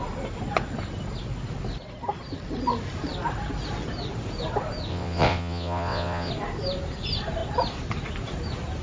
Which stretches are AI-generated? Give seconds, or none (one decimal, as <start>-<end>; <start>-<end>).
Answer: 4.9-6.3